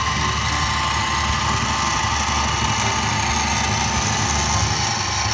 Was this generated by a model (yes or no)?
no